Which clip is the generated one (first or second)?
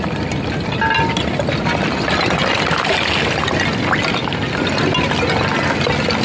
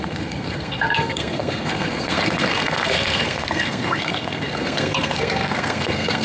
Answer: second